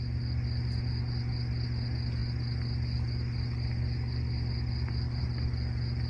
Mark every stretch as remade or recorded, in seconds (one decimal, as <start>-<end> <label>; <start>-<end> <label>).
0.0-6.1 recorded